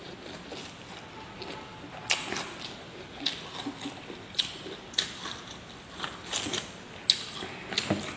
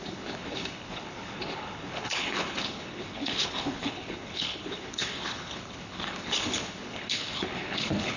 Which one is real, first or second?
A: first